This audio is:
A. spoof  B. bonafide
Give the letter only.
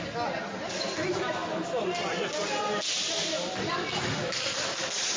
B